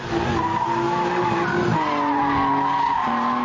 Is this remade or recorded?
recorded